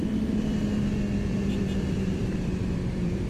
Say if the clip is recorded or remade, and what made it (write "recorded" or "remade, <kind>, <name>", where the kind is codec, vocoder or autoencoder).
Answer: remade, vocoder, BigVGAN v2